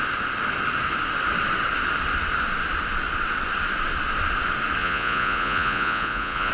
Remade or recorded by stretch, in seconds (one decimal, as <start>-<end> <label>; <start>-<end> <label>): 0.0-4.8 recorded; 4.8-6.5 remade

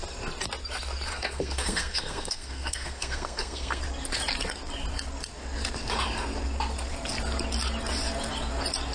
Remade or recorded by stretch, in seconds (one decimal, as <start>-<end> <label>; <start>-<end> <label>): 0.0-1.1 recorded; 1.1-3.8 remade; 3.8-8.9 recorded

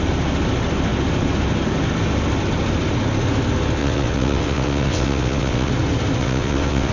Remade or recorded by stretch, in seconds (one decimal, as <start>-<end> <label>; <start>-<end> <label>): 0.0-3.8 recorded; 3.8-5.7 remade; 5.7-6.2 recorded; 6.2-6.9 remade

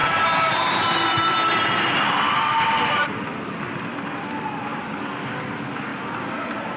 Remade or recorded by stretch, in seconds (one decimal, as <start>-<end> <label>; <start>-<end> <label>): 0.0-4.1 remade; 4.1-4.7 recorded; 4.7-5.4 remade; 5.4-5.9 recorded; 5.9-6.8 remade

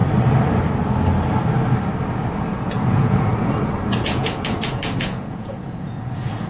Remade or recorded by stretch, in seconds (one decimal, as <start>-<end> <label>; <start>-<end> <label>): 0.0-2.4 recorded; 2.4-3.3 remade; 3.3-3.9 recorded; 3.9-6.5 remade

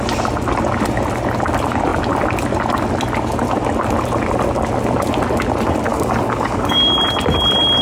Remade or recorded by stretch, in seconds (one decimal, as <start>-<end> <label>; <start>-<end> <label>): 0.0-5.9 recorded; 5.9-6.9 remade; 6.9-7.8 recorded

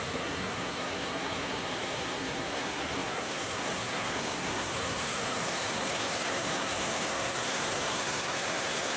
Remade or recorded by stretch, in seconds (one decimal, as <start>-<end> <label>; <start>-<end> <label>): 0.0-9.0 remade